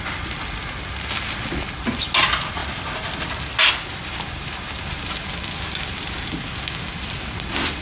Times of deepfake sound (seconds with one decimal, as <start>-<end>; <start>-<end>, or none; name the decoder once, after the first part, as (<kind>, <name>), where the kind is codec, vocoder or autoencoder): none